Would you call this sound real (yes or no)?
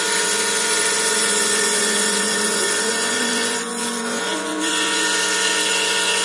no